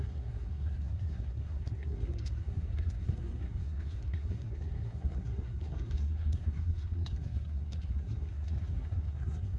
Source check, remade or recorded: remade